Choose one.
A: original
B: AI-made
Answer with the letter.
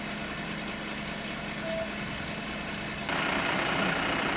A